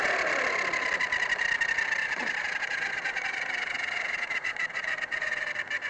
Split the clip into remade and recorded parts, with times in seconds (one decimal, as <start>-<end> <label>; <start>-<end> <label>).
0.0-2.0 recorded; 2.0-5.5 remade; 5.5-5.9 recorded